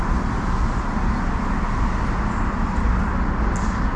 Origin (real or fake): real